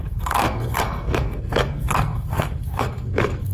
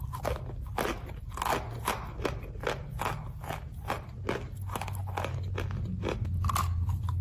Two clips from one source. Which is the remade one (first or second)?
first